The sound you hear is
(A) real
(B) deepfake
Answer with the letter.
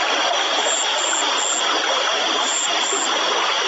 A